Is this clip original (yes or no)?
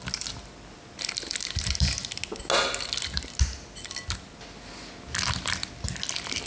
yes